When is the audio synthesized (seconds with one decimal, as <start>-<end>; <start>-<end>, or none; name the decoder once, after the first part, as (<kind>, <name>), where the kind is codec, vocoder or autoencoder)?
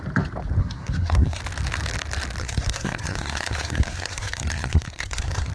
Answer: 0.6-1.4 (codec, SNAC); 2.4-5.5